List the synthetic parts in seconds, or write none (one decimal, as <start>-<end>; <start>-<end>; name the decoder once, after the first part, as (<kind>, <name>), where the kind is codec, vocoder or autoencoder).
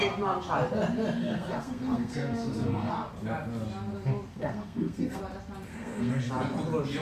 1.2-2.9 (codec, SNAC); 4.3-5.2; 5.7-6.3